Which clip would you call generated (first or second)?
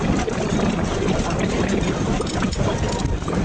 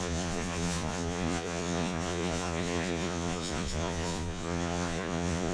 second